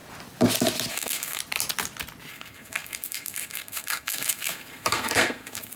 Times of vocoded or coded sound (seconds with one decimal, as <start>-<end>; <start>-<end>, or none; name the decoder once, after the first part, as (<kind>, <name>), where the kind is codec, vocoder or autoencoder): 0.9-1.4 (codec, SNAC); 2.3-5.8